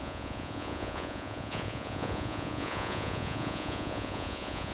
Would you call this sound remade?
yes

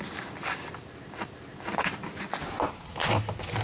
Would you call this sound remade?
no